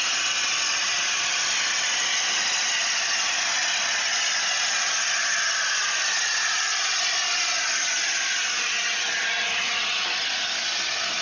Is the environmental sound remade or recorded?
recorded